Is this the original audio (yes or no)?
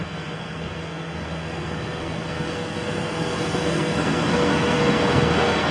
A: no